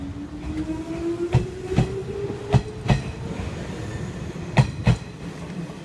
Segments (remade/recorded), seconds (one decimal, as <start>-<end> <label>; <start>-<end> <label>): 0.0-3.8 recorded; 3.8-4.8 remade; 4.8-5.8 recorded